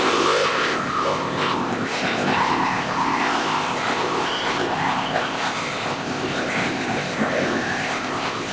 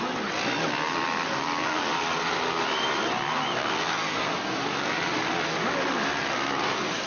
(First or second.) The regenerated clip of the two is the first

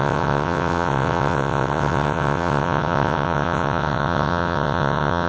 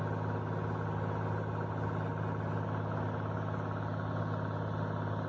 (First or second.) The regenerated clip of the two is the first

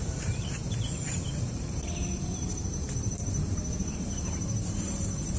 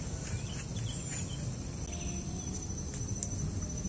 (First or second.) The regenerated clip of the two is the first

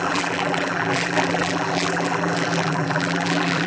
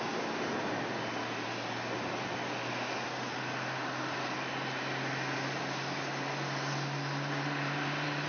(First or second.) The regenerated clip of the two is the first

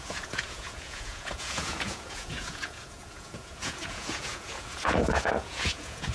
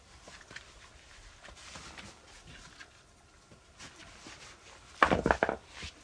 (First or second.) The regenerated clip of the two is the first